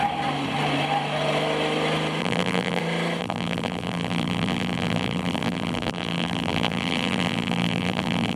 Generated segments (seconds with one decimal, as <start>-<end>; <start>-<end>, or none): 2.2-2.8; 3.2-8.4